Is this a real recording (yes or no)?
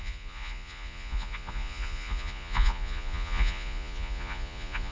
no